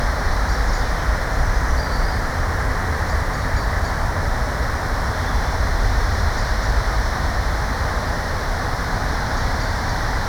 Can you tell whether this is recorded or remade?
remade